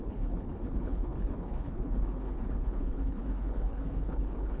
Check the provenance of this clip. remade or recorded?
remade